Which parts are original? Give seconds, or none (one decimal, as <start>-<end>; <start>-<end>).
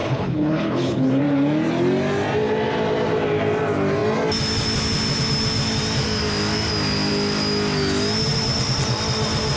1.2-9.6